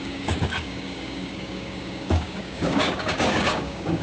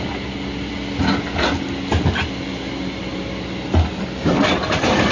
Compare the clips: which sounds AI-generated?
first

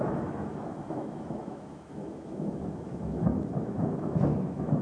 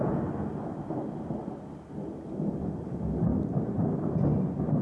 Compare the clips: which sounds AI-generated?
first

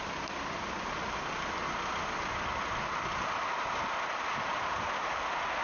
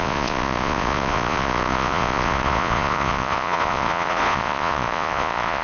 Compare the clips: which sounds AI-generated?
second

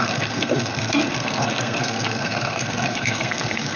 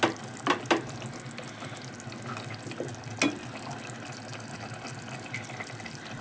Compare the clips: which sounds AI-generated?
first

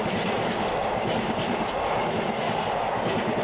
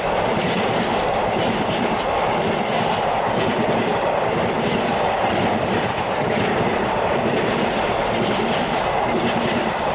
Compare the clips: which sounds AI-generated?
second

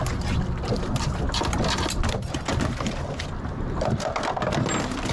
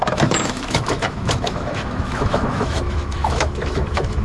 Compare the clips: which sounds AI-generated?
second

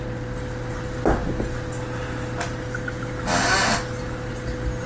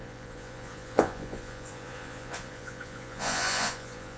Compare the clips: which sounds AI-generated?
second